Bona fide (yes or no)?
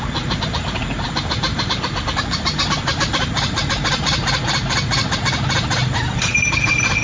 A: no